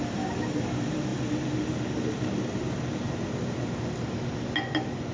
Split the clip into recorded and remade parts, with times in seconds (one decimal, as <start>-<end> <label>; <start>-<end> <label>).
0.0-5.1 recorded